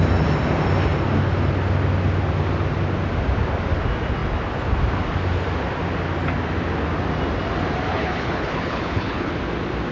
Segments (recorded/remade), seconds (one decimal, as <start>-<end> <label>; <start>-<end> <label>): 0.0-7.9 recorded; 7.9-9.3 remade; 9.3-9.9 recorded